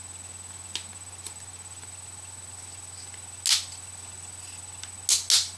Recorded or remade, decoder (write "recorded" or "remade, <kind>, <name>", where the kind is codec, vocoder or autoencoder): recorded